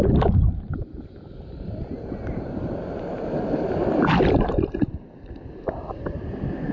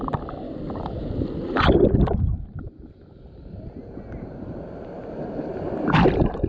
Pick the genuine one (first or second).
second